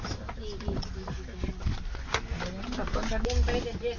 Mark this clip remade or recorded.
recorded